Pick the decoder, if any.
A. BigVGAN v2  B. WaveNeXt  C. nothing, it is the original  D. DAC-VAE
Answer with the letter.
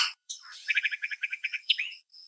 B